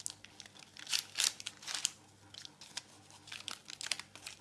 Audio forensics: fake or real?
real